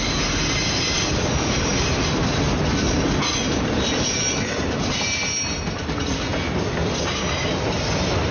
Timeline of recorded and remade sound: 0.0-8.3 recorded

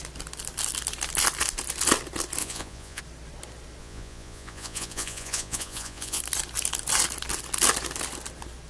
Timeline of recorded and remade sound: 0.0-2.4 recorded; 2.4-3.0 remade; 3.0-3.8 recorded; 3.8-6.2 remade; 6.2-8.7 recorded

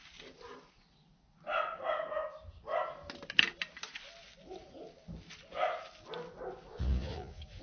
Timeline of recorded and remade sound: 0.0-6.7 recorded; 6.7-7.6 remade

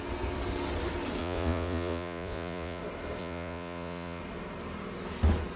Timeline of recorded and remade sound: 0.0-1.2 recorded; 1.2-2.8 remade; 2.8-3.2 recorded; 3.2-4.2 remade; 4.2-5.6 recorded

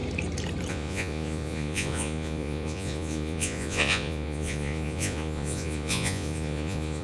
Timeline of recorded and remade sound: 0.0-0.7 recorded; 0.7-7.0 remade